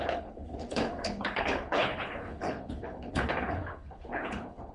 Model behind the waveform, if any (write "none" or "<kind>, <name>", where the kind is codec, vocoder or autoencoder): codec, HILCodec